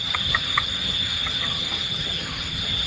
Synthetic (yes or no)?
yes